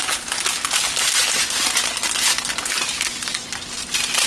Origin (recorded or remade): recorded